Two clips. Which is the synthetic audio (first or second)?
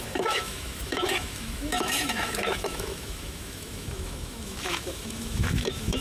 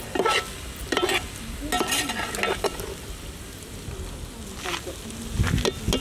first